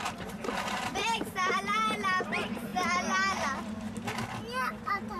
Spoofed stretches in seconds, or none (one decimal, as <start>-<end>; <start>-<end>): 0.9-1.6